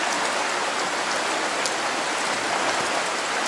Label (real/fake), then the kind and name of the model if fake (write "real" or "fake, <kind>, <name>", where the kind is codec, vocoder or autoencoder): real